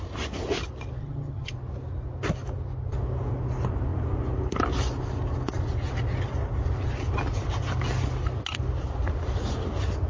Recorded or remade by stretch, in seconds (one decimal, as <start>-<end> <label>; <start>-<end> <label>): 0.0-1.0 recorded; 1.0-1.5 remade; 1.5-10.1 recorded